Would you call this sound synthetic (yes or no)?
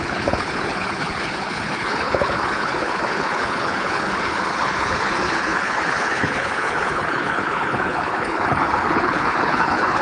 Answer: yes